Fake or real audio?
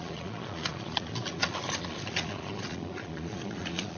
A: fake